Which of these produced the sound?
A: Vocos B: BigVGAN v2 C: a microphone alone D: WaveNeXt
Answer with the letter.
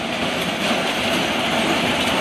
C